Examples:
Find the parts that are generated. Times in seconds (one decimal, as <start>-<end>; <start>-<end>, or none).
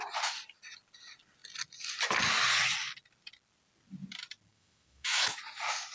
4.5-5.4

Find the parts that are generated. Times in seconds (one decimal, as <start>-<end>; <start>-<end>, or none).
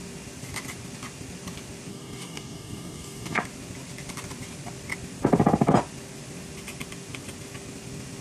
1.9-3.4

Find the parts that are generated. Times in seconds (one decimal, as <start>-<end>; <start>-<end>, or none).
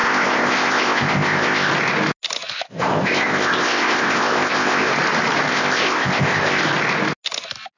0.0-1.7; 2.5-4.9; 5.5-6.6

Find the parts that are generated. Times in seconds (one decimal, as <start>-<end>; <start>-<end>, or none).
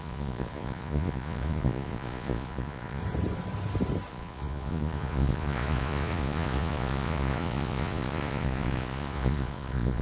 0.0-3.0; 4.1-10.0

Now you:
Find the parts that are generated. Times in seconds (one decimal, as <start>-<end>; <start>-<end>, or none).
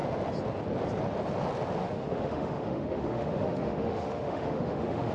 1.8-5.1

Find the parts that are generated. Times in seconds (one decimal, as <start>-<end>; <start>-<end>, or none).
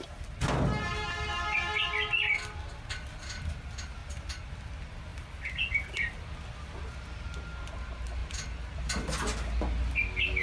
4.0-4.5; 8.2-8.8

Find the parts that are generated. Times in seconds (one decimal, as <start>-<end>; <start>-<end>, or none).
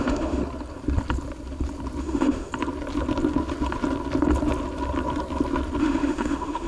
0.0-0.4; 2.0-2.5; 5.8-6.7